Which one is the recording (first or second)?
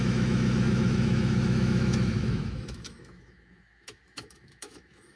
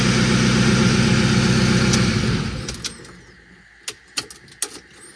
second